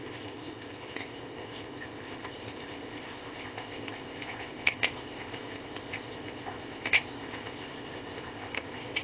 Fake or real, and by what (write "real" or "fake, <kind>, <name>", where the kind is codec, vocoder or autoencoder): fake, codec, ZipCodec